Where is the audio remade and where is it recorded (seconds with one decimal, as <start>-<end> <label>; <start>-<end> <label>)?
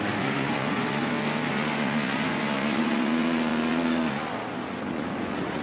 0.0-1.0 remade; 1.0-1.5 recorded; 1.5-5.6 remade